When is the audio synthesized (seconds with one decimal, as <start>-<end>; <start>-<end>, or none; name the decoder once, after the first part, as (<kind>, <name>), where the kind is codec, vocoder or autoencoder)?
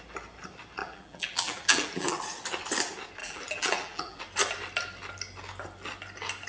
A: 0.8-2.2 (vocoder, BigVGAN v2); 3.2-4.2